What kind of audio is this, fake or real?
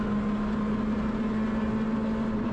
real